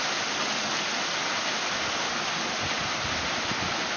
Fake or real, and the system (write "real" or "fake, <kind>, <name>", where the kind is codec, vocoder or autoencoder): real